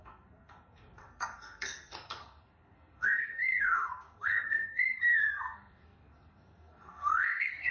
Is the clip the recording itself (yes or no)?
no